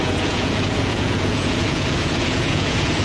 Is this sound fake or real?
fake